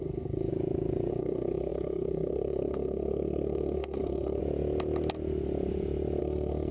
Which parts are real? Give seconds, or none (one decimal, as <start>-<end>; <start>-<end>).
0.5-1.1; 4.4-6.2